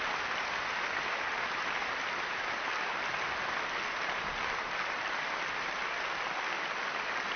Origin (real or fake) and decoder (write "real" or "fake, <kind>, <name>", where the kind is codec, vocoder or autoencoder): real